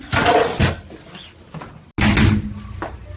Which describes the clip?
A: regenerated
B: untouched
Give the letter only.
B